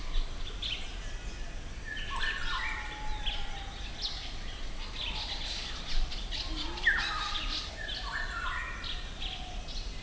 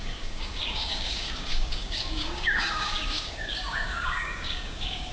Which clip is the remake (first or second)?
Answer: second